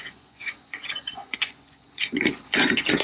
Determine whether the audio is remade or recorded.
remade